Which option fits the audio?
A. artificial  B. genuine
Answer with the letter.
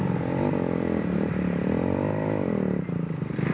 B